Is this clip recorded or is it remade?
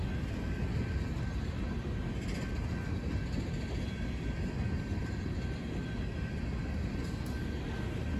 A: recorded